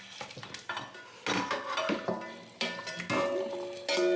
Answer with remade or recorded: recorded